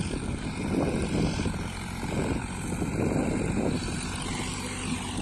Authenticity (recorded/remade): recorded